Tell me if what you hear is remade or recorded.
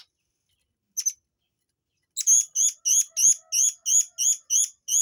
recorded